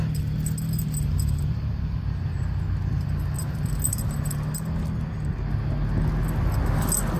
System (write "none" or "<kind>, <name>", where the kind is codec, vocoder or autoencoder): none